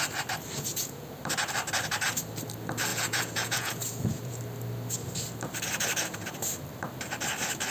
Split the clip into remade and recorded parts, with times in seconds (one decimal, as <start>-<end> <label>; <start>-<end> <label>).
0.0-0.7 recorded; 0.7-1.2 remade; 1.2-2.9 recorded; 2.9-4.4 remade; 4.4-7.7 recorded